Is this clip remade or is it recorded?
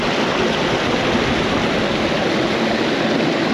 recorded